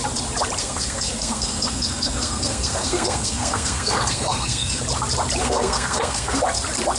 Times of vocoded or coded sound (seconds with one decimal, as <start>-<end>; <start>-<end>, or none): 0.6-4.8; 5.4-6.4